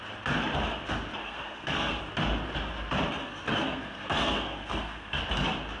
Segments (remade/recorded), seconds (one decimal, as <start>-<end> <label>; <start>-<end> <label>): 0.0-1.2 recorded; 1.2-2.0 remade; 2.0-3.2 recorded; 3.2-5.2 remade; 5.2-5.8 recorded